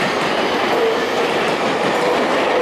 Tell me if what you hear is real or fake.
real